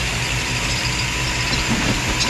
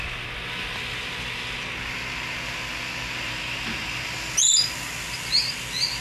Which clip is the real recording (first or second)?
second